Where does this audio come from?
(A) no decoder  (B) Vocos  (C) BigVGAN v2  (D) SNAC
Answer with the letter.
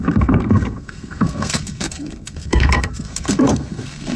D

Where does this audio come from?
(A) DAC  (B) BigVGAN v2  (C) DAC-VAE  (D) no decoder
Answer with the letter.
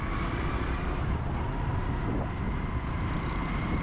D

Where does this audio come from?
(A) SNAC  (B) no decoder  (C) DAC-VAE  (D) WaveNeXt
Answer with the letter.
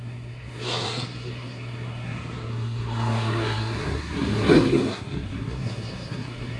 A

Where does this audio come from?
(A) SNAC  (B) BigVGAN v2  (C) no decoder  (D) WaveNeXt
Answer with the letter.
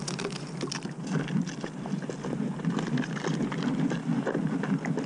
C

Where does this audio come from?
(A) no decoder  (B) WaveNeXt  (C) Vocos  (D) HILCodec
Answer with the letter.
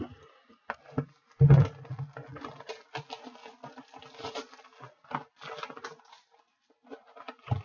A